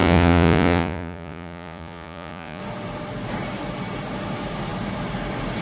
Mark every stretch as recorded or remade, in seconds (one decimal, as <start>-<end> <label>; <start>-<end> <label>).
0.0-2.6 remade; 2.6-5.6 recorded